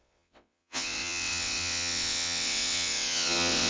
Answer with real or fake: fake